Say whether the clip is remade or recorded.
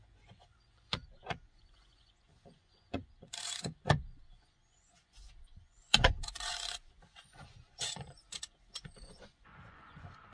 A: remade